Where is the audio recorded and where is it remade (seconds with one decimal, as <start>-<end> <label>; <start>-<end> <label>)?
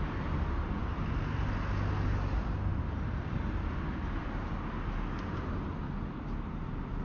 0.0-7.0 recorded